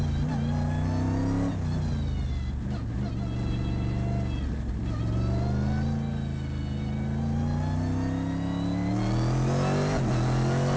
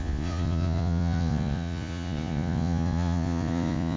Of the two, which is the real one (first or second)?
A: first